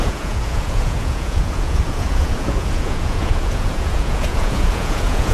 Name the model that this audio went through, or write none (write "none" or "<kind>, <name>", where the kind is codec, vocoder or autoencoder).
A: vocoder, Vocos